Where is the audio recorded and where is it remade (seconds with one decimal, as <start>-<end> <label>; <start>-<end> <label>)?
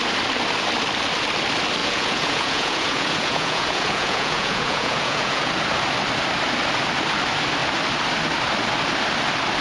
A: 0.0-1.8 recorded; 1.8-5.5 remade; 5.5-9.6 recorded